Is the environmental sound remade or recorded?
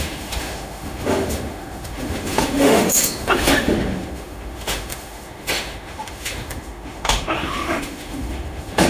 remade